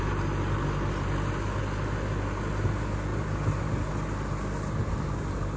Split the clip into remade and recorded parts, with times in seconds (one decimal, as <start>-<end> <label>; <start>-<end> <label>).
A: 0.0-5.6 recorded